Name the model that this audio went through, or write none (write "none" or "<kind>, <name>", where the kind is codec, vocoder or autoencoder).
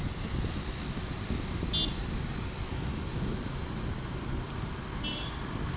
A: none